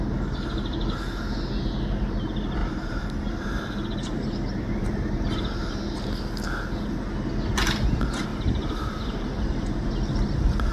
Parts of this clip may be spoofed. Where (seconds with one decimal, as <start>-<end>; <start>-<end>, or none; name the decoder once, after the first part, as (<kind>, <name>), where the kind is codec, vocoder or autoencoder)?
2.6-6.1 (vocoder, BigVGAN v2); 8.3-9.9